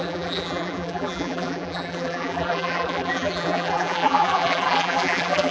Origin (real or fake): fake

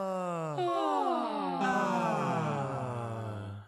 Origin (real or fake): real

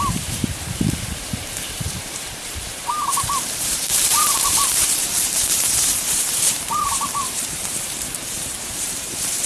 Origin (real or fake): fake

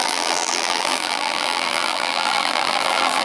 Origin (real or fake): fake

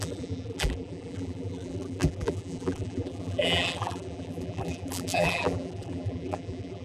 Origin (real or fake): fake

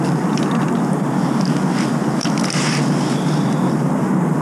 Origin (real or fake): real